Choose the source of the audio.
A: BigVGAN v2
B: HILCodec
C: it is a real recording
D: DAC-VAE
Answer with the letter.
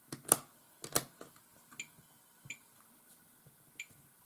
C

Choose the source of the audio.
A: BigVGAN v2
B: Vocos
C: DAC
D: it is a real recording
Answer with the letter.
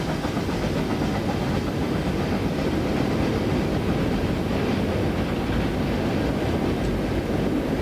D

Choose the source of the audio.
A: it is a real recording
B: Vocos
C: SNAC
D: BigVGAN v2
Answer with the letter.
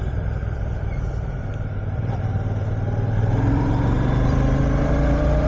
D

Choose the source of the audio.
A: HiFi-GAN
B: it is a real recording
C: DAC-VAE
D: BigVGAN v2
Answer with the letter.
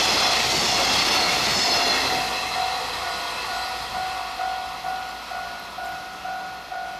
B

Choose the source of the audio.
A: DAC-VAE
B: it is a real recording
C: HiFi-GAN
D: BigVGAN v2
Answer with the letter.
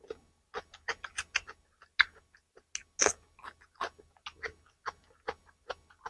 B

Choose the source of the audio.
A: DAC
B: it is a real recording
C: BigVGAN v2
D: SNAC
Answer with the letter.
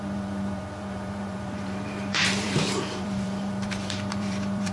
C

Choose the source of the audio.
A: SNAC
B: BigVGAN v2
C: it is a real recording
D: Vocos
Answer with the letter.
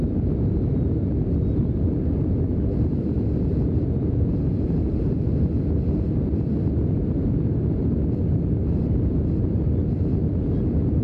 C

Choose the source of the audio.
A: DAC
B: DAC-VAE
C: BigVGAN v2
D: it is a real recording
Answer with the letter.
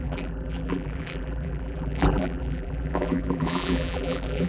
C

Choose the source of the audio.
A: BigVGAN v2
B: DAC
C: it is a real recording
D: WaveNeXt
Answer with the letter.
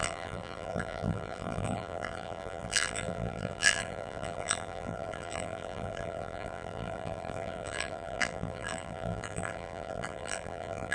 A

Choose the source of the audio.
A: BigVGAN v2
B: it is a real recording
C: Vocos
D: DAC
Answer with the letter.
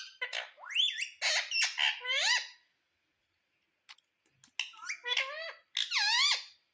B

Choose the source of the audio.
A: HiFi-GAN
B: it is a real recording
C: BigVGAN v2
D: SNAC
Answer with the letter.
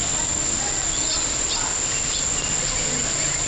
B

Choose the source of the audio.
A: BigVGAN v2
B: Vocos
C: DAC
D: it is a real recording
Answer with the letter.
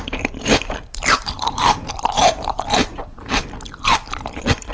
A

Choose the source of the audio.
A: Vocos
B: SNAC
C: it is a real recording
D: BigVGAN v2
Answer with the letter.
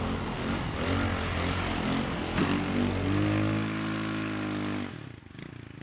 C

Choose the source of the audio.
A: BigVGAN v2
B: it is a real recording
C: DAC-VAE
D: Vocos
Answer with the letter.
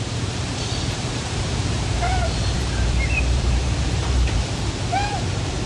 A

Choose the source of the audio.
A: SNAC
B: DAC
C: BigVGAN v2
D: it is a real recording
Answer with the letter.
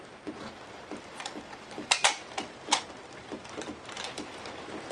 C